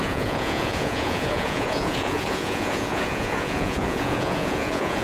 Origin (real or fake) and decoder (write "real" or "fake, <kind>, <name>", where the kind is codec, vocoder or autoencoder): fake, vocoder, Vocos